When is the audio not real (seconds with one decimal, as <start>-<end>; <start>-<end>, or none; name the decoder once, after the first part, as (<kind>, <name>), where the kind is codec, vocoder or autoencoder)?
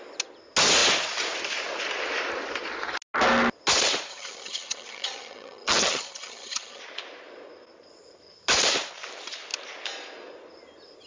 4.1-6.8 (vocoder, HiFi-GAN)